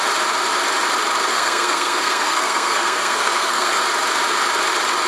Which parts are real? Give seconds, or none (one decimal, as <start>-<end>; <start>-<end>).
0.0-1.3; 3.7-5.1